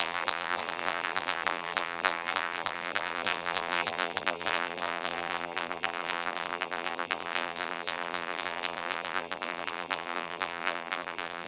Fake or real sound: fake